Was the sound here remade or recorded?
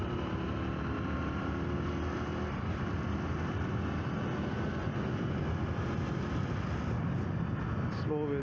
recorded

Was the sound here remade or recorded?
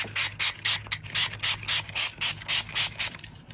recorded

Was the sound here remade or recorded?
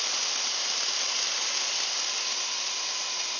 recorded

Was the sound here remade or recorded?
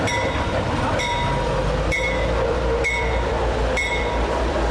remade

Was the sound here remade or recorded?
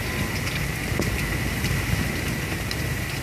recorded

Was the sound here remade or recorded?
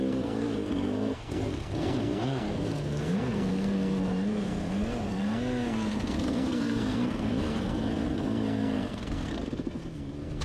remade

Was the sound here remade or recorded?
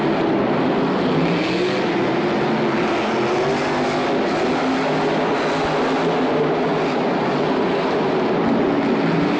recorded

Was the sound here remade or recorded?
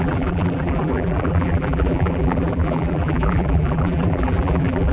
remade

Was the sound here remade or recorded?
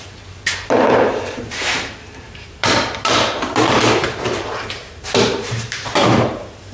remade